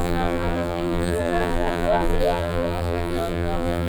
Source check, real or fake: fake